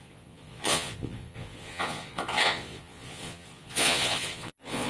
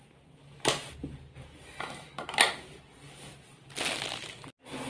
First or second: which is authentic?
second